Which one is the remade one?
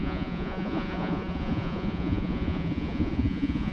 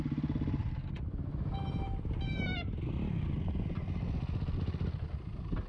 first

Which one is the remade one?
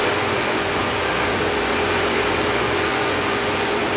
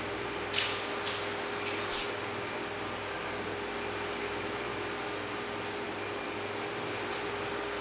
first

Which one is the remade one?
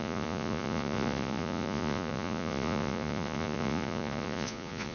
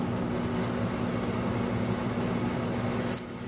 first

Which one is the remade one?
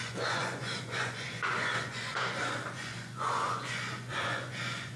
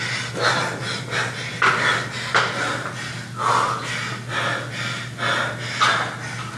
first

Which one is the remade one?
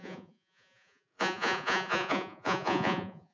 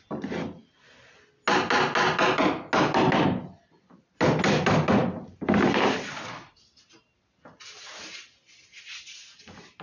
first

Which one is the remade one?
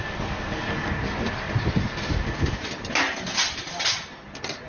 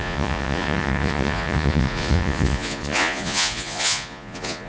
second